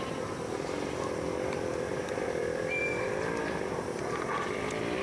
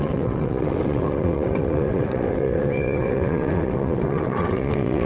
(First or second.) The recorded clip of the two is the first